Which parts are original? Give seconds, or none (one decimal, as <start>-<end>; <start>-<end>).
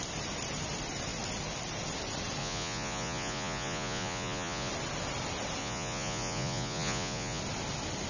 0.0-2.4; 4.7-5.6; 7.4-8.1